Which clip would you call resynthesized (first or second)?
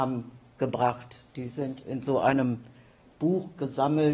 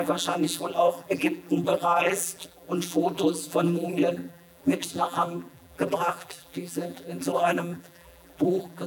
second